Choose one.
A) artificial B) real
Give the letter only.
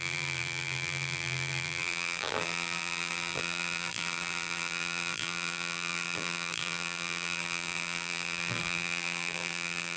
A